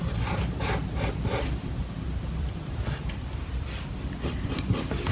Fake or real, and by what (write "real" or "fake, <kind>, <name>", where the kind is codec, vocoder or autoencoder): fake, vocoder, BigVGAN v2